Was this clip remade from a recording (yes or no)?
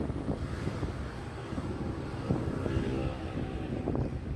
yes